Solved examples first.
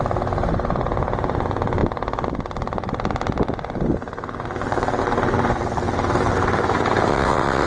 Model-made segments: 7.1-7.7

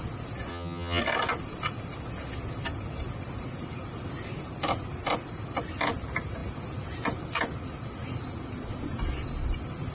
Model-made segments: 0.5-1.0

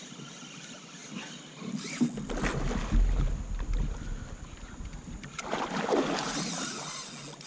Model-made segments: none

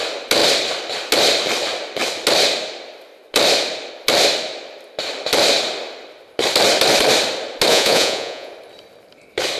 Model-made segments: 7.7-8.5

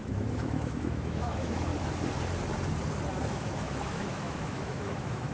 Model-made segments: 0.0-1.7; 3.2-5.3

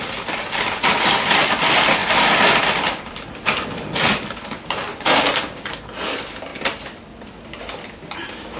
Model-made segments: 4.9-5.8